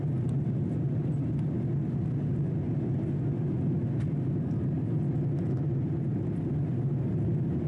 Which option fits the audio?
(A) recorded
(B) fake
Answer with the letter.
A